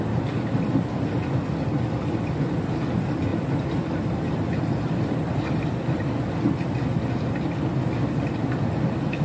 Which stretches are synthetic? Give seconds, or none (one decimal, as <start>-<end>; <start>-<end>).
none